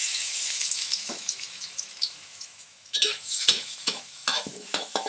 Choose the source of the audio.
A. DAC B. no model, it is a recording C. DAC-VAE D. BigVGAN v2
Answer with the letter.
C